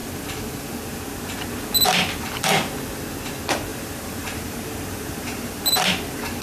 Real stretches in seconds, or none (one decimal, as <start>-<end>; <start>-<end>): 0.0-3.7; 5.9-6.4